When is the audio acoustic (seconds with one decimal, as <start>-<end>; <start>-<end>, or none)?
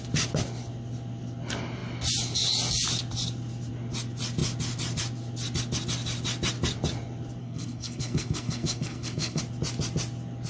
0.0-7.4; 9.4-10.5